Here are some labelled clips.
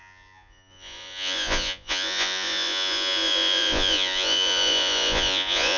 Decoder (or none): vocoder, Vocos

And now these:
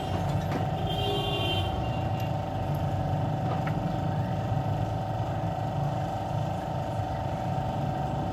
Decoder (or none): none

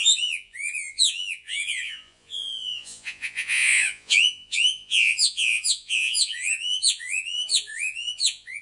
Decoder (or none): vocoder, Vocos